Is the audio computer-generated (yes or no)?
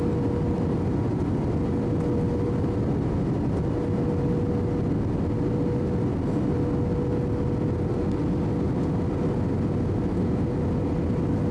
no